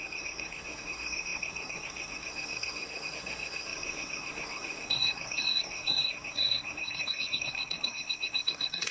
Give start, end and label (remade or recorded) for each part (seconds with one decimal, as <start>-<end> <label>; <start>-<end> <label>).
0.0-8.9 remade